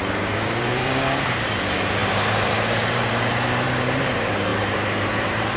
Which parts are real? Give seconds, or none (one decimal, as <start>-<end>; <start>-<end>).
none